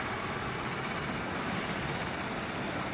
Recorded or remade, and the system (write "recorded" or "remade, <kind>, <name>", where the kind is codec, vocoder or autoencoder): recorded